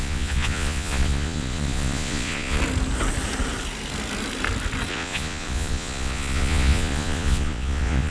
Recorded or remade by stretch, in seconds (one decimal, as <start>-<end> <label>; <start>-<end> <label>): 0.0-2.6 remade; 2.6-4.9 recorded; 4.9-8.1 remade